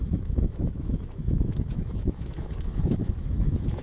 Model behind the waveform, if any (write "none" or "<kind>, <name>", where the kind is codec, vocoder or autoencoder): autoencoder, DAC-VAE